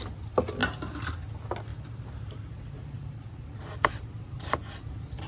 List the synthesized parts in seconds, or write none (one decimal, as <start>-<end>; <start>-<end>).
0.6-1.1; 1.7-5.3